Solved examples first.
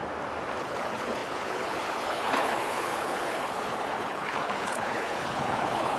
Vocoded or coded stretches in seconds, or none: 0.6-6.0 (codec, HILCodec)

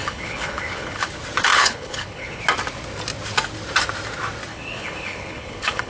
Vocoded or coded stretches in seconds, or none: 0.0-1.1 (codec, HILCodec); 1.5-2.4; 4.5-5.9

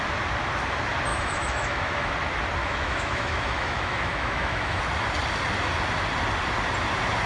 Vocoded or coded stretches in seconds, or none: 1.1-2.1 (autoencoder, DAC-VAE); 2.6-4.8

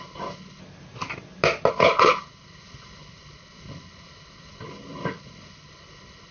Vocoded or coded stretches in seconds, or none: 0.0-0.6 (codec, HILCodec); 1.7-6.3